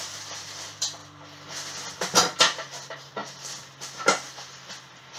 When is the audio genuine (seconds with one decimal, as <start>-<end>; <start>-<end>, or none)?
1.0-2.4; 3.2-5.2